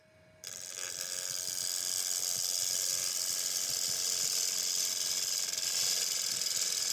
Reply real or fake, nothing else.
real